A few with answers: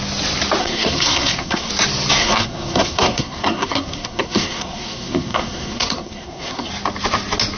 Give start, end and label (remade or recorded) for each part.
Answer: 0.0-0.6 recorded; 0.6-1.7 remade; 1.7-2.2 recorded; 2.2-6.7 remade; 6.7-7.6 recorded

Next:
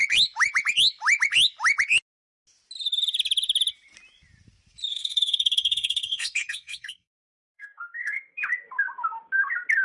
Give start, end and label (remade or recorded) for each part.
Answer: 0.0-4.9 recorded; 4.9-8.4 remade; 8.4-9.8 recorded

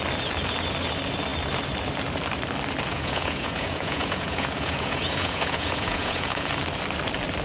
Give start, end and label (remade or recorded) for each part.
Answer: 0.0-2.9 recorded; 2.9-6.6 remade; 6.6-7.4 recorded

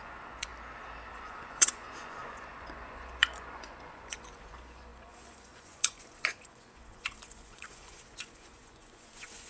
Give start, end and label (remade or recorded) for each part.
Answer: 0.0-0.5 remade; 0.5-1.1 recorded; 1.1-9.5 remade

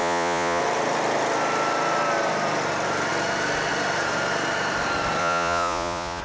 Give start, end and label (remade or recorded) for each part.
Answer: 0.0-0.6 remade; 0.6-5.2 recorded; 5.2-6.2 remade

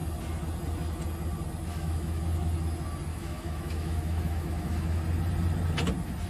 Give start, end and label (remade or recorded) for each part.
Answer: 0.0-1.7 recorded; 1.7-2.2 remade; 2.2-3.1 recorded; 3.1-5.0 remade; 5.0-6.3 recorded

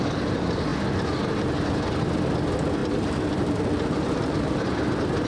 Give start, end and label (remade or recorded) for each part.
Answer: 0.0-2.8 recorded; 2.8-4.6 remade; 4.6-5.3 recorded

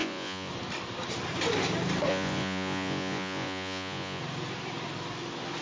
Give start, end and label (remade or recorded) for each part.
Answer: 0.0-0.5 remade; 0.5-2.1 recorded; 2.1-4.2 remade; 4.2-5.6 recorded